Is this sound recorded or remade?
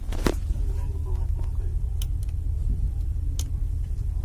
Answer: remade